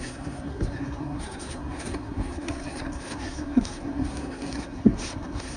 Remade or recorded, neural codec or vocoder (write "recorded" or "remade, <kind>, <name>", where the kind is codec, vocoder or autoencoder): remade, codec, SNAC